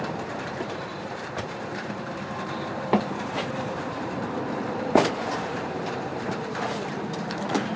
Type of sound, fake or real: fake